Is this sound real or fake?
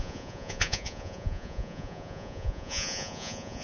fake